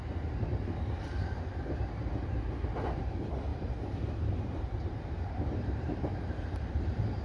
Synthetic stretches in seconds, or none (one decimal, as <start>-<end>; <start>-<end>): 3.5-7.2